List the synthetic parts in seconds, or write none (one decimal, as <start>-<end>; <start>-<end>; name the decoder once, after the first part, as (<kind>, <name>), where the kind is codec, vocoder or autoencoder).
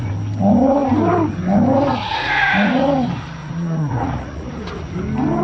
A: 1.9-2.8 (vocoder, Vocos); 3.4-4.6